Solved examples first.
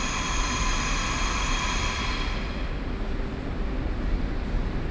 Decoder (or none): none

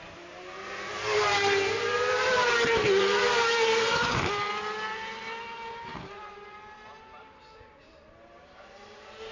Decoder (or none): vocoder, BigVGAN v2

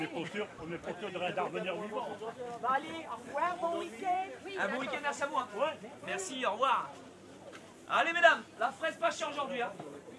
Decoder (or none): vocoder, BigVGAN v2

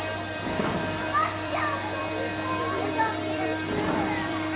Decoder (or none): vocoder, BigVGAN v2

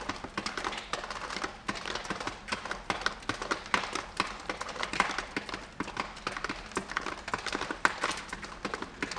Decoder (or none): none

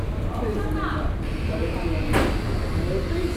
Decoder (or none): none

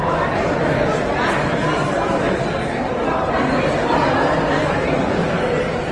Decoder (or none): none